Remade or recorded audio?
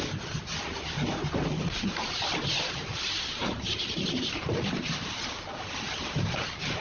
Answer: remade